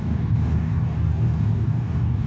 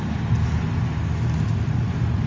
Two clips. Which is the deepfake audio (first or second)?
first